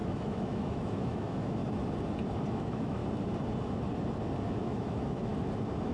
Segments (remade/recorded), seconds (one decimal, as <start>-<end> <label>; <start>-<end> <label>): 0.0-1.6 remade; 1.6-2.5 recorded; 2.5-3.0 remade; 3.0-4.5 recorded; 4.5-5.3 remade; 5.3-5.9 recorded